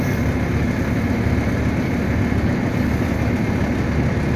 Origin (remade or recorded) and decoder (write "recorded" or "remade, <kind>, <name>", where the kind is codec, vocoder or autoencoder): recorded